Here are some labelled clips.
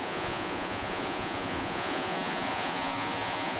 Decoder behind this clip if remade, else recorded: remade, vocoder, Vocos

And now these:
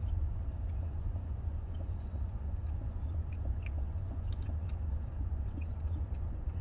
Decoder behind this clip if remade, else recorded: remade, vocoder, Vocos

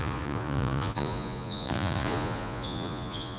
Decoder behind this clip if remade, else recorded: remade, vocoder, Vocos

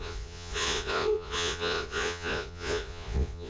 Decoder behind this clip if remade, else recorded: remade, vocoder, Vocos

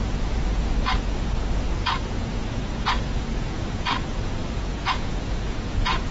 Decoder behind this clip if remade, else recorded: remade, vocoder, Vocos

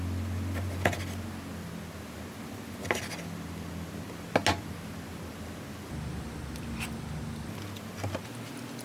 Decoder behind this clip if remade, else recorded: recorded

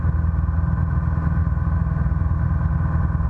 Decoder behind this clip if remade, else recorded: recorded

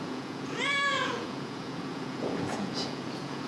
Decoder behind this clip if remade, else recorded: remade, vocoder, Vocos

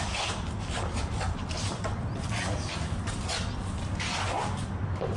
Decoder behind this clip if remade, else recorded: recorded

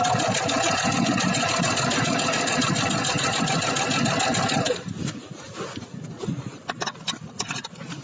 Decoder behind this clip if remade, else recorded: recorded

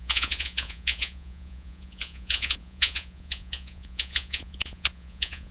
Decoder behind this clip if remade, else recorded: remade, vocoder, Vocos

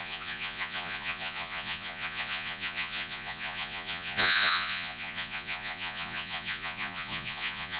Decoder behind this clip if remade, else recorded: remade, vocoder, Vocos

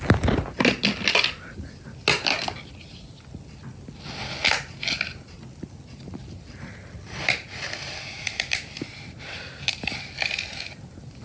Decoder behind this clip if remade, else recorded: recorded